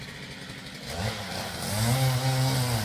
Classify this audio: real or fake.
real